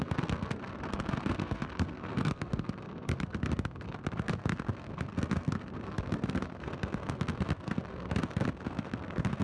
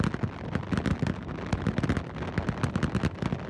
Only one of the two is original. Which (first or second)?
second